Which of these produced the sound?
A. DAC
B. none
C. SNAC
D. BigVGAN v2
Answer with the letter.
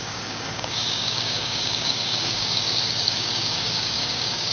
A